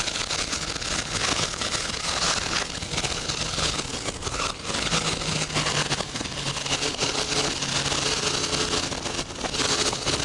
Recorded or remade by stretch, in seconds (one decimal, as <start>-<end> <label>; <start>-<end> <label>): 0.0-7.7 remade; 7.7-9.5 recorded; 9.5-10.2 remade